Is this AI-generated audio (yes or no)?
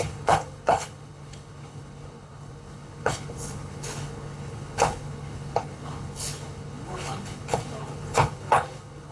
yes